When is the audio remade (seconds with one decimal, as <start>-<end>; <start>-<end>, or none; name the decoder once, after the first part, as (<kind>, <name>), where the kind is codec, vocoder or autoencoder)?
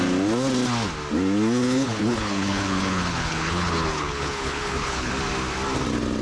1.6-5.1 (codec, HILCodec)